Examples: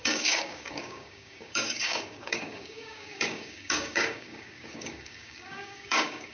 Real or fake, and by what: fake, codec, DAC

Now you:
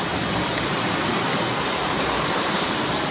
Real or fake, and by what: fake, vocoder, BigVGAN v2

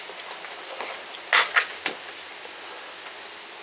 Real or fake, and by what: real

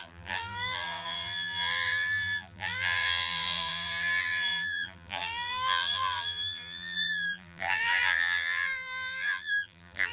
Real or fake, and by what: fake, vocoder, BigVGAN v2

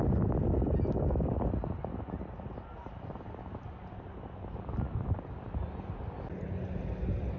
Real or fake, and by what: real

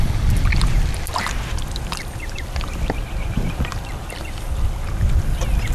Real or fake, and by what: real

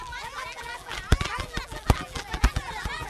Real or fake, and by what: fake, vocoder, BigVGAN v2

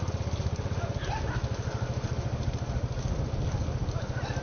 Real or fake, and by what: real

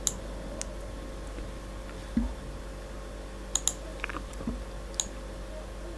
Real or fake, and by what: real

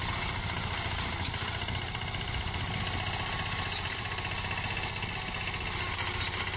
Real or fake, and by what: real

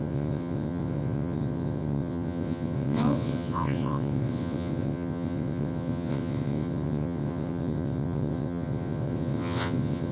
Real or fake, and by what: fake, vocoder, WaveNeXt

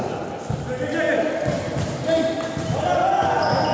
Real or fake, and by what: real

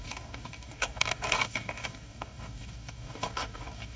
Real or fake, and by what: fake, codec, DAC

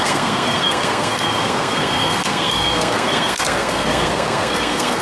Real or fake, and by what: fake, codec, SNAC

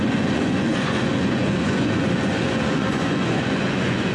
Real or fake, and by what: fake, vocoder, Vocos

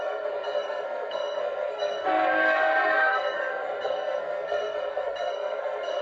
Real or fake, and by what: fake, codec, SNAC